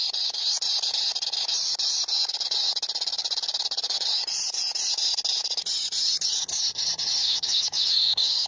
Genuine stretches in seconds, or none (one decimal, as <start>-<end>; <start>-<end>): 0.0-7.2